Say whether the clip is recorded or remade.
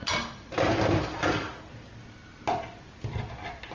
recorded